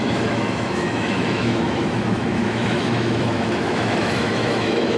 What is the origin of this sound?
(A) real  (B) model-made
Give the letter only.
B